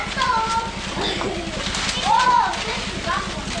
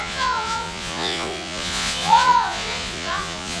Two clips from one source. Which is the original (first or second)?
first